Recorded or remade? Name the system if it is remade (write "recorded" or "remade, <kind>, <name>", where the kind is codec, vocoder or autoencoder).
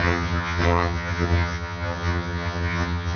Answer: remade, vocoder, HiFi-GAN